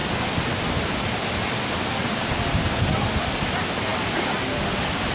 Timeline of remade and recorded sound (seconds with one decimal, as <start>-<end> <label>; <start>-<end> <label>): 0.0-5.1 recorded

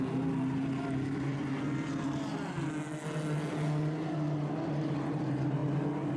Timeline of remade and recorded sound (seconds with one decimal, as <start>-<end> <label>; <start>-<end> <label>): 0.0-6.2 recorded

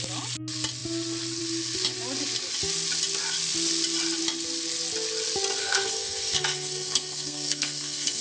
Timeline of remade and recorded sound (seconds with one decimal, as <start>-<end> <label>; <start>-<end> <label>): 0.0-5.6 recorded; 5.6-8.2 remade

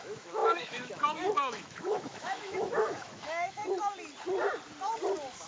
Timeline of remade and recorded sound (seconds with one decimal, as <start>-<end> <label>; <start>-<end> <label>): 0.0-3.6 remade; 3.6-5.5 recorded